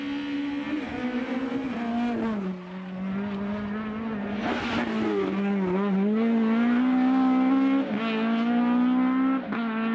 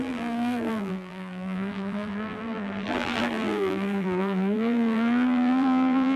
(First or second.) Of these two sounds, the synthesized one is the second